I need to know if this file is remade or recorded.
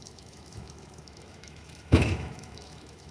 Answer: remade